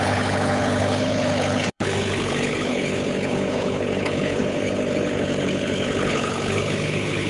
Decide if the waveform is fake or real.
fake